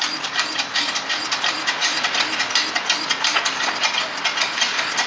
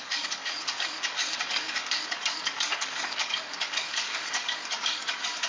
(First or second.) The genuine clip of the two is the first